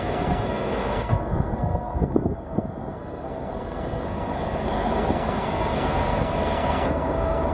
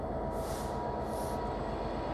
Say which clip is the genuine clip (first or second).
second